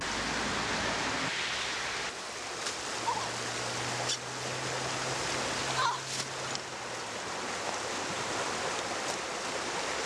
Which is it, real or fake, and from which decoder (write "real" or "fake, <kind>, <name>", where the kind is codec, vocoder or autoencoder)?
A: real